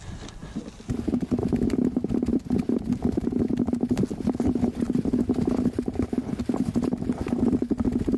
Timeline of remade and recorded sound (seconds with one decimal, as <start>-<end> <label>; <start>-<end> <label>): 0.0-8.2 recorded